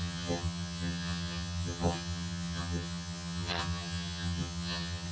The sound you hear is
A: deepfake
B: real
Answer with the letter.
A